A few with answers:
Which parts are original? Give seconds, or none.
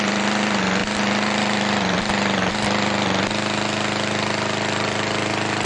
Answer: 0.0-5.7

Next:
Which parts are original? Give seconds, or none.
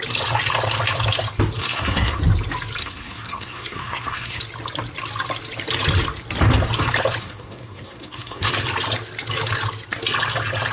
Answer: 0.0-1.6; 2.2-2.8; 4.4-7.2; 8.5-10.7